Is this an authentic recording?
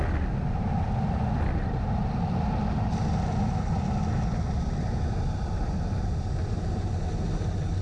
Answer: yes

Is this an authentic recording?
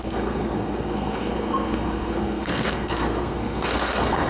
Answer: no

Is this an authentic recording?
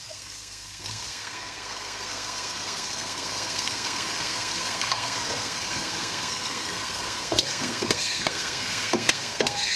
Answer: no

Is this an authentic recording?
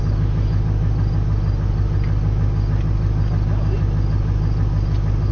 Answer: yes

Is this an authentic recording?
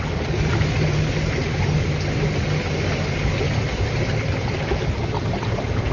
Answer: yes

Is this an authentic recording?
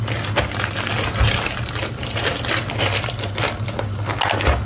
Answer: yes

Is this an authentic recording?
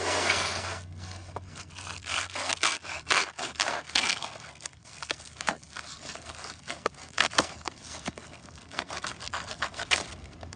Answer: no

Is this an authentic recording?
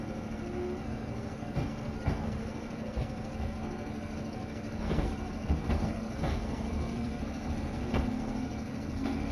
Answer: no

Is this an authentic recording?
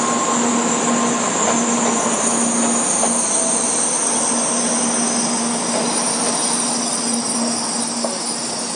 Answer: yes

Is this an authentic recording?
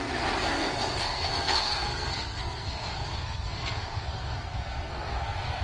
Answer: no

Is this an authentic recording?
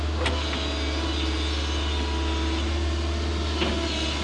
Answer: yes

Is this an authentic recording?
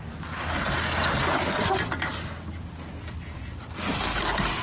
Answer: yes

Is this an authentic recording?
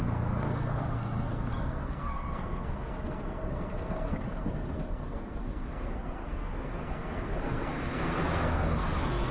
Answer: no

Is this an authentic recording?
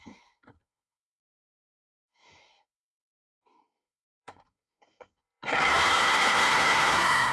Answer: no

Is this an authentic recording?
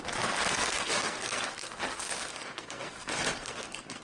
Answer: no